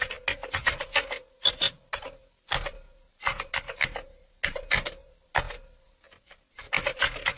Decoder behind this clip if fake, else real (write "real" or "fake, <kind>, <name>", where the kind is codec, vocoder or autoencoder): real